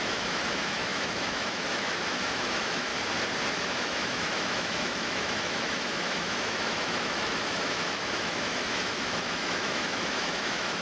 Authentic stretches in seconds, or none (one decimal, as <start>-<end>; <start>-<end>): 2.9-3.5